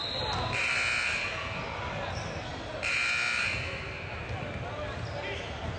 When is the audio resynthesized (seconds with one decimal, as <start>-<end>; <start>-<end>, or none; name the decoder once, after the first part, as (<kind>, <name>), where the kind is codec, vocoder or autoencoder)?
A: none